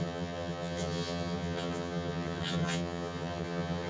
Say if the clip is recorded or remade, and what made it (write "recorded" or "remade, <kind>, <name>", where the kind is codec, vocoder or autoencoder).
remade, vocoder, HiFi-GAN